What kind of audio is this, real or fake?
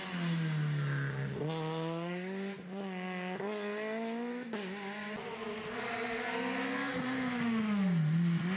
real